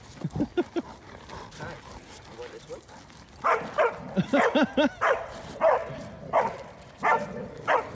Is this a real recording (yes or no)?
yes